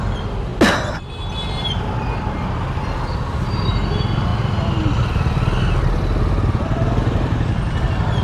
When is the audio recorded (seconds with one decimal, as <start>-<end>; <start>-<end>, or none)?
0.0-8.2